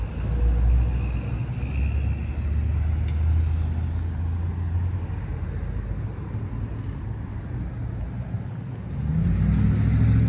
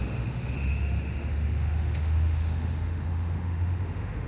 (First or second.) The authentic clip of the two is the first